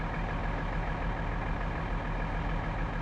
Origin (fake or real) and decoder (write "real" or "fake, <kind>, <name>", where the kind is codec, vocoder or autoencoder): real